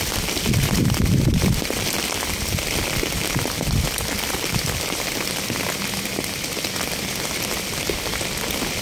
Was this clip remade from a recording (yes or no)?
no